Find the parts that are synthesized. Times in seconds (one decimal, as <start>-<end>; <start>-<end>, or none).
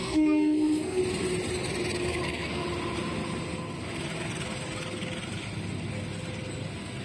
0.0-1.0; 2.0-2.6